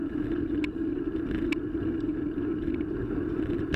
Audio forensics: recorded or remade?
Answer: recorded